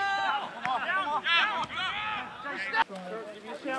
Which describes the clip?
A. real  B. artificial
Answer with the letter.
A